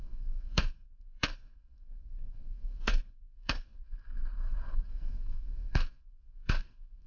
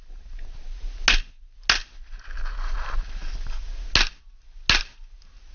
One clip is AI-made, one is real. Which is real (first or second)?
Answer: second